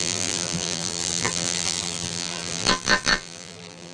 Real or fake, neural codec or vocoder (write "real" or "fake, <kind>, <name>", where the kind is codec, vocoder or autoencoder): fake, vocoder, BigVGAN v2